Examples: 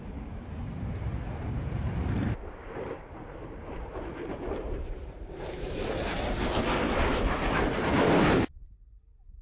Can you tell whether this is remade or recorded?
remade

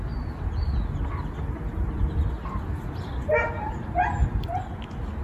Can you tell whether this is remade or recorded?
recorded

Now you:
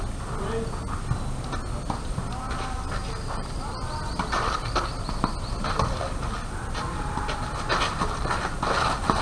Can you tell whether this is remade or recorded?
recorded